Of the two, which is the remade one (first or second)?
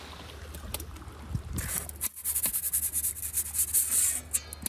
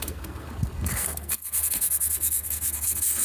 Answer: second